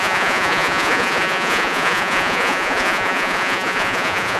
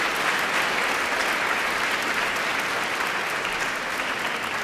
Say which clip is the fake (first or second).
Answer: first